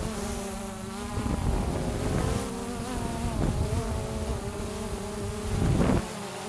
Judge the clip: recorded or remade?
recorded